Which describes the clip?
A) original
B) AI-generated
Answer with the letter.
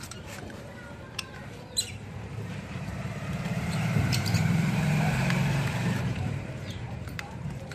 B